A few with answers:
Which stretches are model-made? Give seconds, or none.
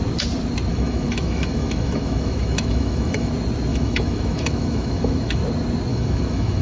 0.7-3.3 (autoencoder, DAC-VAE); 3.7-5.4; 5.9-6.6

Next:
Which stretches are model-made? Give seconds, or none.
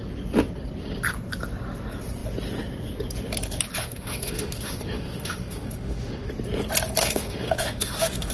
3.8-6.3 (autoencoder, DAC-VAE); 7.0-8.3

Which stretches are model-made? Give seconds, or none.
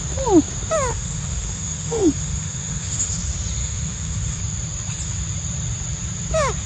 0.9-3.2 (autoencoder, DAC-VAE); 3.6-4.4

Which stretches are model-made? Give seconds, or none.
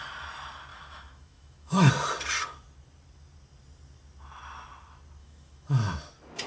0.7-1.9 (autoencoder, DAC-VAE); 5.2-6.0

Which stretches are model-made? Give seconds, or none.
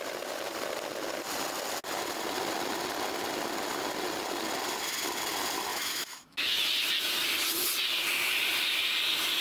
5.7-6.6 (autoencoder, DAC-VAE)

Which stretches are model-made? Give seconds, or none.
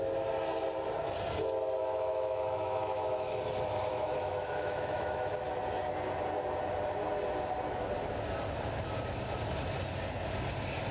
1.8-3.4 (autoencoder, DAC-VAE); 3.9-5.6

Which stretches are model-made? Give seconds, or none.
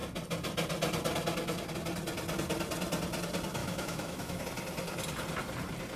3.6-4.4 (autoencoder, DAC-VAE)